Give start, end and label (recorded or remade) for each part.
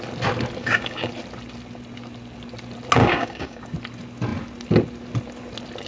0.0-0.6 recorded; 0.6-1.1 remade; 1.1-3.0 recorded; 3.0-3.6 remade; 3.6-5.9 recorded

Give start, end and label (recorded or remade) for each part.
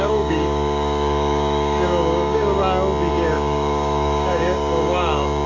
0.0-2.6 remade; 2.6-3.1 recorded; 3.1-5.5 remade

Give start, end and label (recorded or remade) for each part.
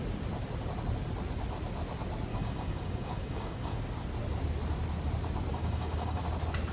0.0-2.3 recorded; 2.3-3.8 remade; 3.8-5.5 recorded; 5.5-6.2 remade; 6.2-6.7 recorded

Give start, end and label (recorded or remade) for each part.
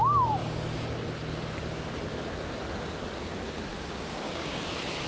0.0-3.7 recorded; 3.7-4.6 remade; 4.6-5.1 recorded